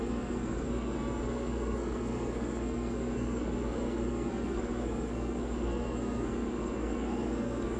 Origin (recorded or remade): remade